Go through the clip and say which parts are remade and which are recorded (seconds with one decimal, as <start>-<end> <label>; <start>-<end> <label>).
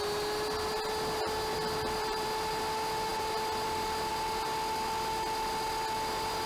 0.0-1.5 recorded; 1.5-2.6 remade; 2.6-3.1 recorded; 3.1-4.1 remade; 4.1-6.5 recorded